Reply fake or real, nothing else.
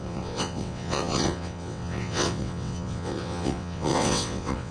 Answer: fake